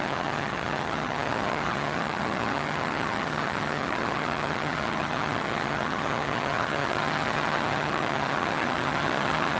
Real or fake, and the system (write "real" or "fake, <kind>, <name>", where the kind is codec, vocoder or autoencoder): fake, vocoder, HiFi-GAN